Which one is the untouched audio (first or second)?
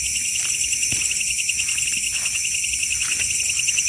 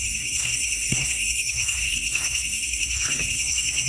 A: first